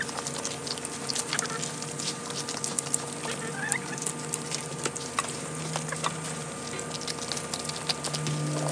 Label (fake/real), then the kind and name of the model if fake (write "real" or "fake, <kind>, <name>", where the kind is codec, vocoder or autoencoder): real